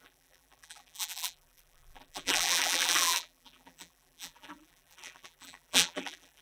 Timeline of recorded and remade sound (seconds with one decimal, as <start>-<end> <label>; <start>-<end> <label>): 0.0-6.4 remade